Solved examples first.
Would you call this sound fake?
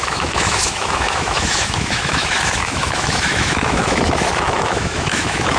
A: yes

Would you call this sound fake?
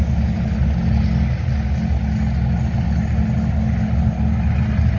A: no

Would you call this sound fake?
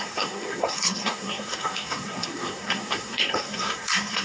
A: yes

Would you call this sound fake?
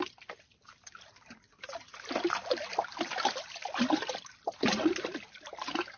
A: no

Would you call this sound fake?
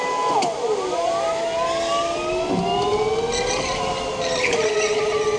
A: no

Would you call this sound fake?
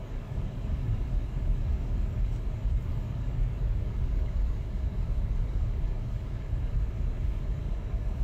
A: yes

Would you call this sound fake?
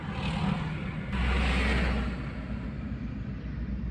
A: no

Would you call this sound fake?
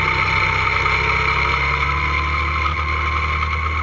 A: no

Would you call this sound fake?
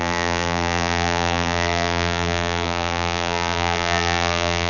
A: yes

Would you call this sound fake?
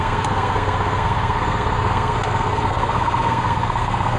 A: yes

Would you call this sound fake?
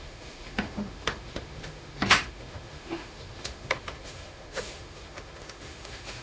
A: yes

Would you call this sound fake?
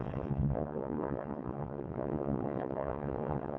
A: yes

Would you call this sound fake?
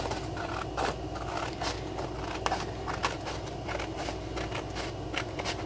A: no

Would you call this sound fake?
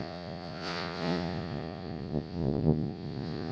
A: yes